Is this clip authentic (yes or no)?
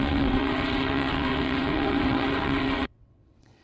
no